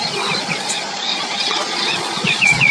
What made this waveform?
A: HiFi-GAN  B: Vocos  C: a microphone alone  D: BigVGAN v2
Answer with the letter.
B